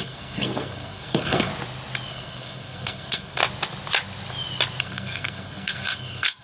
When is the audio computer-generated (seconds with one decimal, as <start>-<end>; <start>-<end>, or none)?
0.0-1.5; 2.1-3.4; 4.8-6.4